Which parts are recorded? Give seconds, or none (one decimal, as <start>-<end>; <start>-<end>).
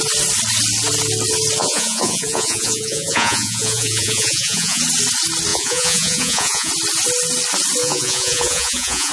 0.0-1.6; 4.8-5.5; 6.7-7.8